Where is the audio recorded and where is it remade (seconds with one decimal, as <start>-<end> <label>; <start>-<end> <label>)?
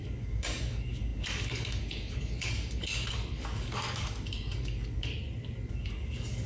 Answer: 0.0-5.1 remade; 5.1-5.7 recorded; 5.7-6.5 remade